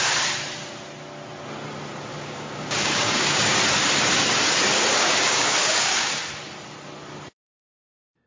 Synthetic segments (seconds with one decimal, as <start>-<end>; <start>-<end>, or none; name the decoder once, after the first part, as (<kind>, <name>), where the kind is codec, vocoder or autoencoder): 2.1-3.6 (codec, DAC); 4.9-6.1